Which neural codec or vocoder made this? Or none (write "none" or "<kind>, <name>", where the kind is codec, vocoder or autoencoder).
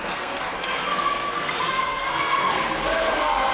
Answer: codec, SNAC